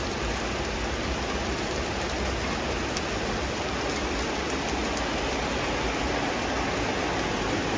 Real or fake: real